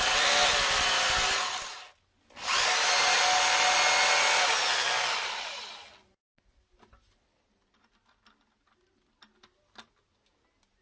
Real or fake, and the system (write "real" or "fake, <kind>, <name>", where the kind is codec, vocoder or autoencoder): real